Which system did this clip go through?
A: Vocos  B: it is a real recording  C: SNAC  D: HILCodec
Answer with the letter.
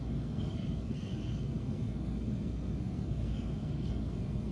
C